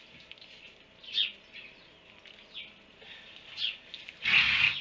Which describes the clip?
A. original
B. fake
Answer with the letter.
A